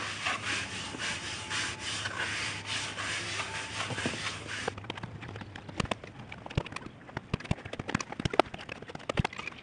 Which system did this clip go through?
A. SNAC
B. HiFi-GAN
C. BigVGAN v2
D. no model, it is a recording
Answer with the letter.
D